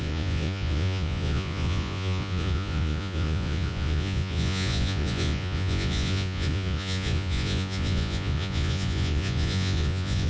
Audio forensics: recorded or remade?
remade